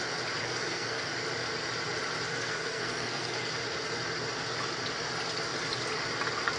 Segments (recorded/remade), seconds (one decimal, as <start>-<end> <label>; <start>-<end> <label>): 0.0-0.4 recorded; 0.4-1.1 remade; 1.1-2.3 recorded; 2.3-3.5 remade; 3.5-6.6 recorded